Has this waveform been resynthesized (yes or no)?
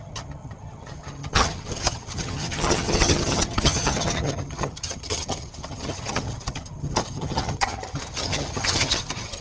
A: yes